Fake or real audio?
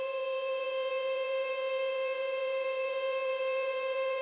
fake